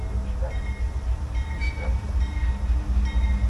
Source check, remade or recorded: recorded